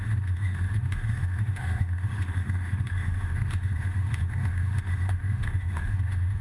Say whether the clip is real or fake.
fake